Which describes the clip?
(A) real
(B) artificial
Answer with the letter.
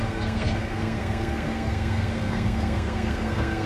B